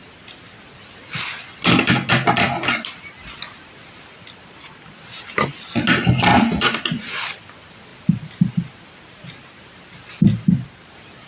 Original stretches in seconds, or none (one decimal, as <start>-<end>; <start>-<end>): 0.0-11.3